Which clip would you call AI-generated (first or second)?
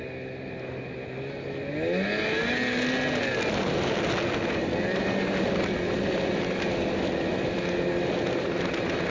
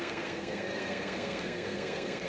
second